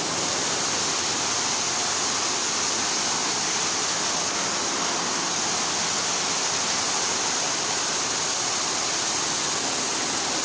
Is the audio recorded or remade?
recorded